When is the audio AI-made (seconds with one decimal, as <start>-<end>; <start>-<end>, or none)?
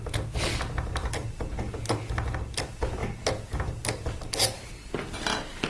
none